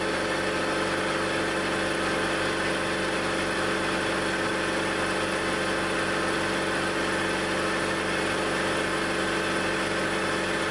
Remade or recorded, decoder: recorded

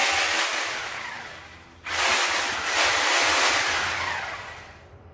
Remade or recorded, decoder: recorded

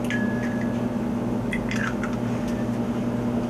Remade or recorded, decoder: recorded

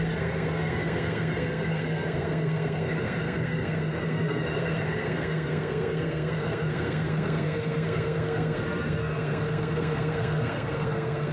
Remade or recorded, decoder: remade, codec, SNAC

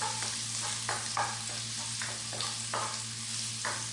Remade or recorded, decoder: recorded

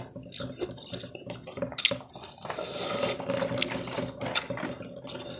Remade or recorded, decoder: recorded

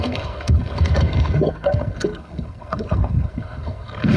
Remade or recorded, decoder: remade, codec, SNAC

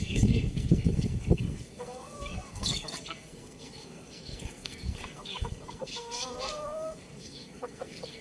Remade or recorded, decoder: remade, codec, SNAC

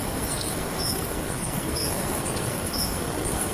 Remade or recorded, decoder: remade, codec, SNAC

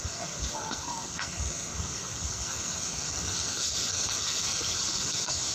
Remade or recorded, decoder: remade, codec, SNAC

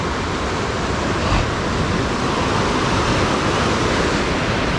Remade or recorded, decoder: recorded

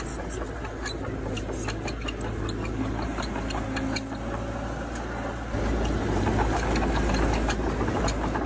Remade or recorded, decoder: recorded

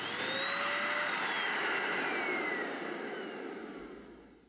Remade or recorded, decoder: recorded